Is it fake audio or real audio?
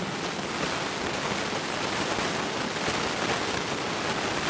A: real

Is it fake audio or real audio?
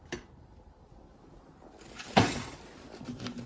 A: real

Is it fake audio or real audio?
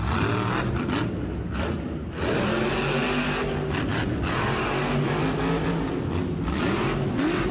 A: real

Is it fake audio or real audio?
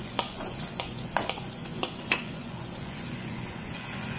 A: fake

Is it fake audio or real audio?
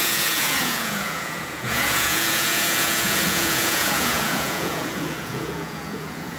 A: fake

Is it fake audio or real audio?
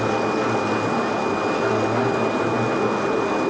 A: real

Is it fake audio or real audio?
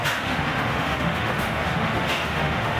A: fake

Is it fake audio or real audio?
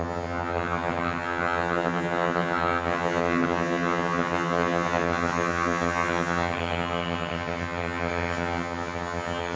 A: fake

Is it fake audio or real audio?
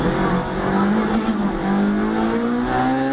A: real